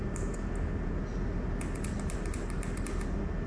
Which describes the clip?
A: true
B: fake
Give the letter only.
A